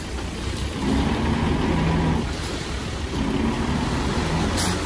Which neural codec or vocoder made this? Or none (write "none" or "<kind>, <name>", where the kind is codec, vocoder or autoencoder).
none